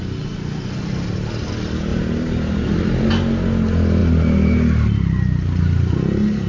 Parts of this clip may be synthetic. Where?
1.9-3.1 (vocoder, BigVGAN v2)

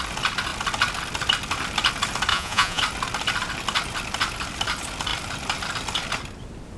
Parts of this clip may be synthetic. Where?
2.3-2.8 (vocoder, Vocos)

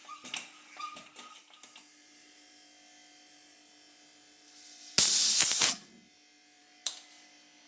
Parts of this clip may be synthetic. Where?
0.0-4.5 (vocoder, BigVGAN v2); 6.6-7.7

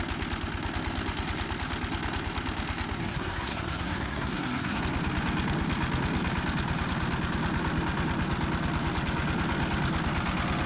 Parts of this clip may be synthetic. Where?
3.0-4.8 (codec, SNAC)

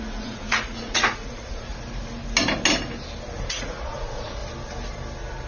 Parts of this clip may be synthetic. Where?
0.0-1.7 (vocoder, Vocos); 3.5-4.4

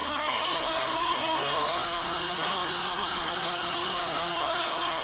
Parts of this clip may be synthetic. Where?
0.0-5.0 (codec, SNAC)

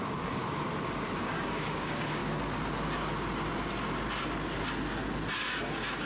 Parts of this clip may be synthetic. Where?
0.0-0.4 (codec, DAC); 1.2-2.2